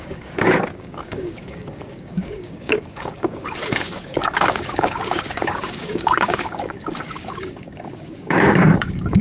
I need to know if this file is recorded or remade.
remade